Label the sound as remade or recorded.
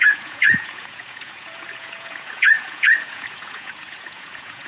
remade